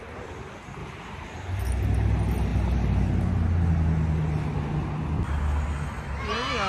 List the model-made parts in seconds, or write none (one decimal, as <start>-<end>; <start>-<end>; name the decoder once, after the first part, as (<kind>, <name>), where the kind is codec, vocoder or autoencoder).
0.8-1.5 (vocoder, BigVGAN v2)